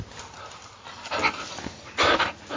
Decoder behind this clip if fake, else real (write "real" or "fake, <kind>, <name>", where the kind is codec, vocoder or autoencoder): real